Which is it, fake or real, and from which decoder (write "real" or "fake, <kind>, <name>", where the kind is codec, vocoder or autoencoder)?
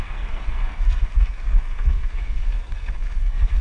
fake, codec, SNAC